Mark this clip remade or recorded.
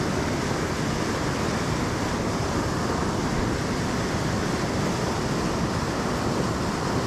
recorded